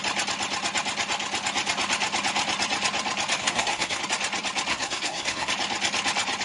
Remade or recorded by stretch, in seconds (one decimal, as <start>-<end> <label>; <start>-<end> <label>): 0.0-3.4 recorded; 3.4-4.0 remade; 4.0-4.7 recorded; 4.7-5.5 remade; 5.5-6.4 recorded